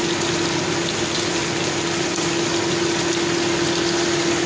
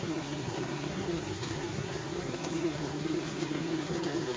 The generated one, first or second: second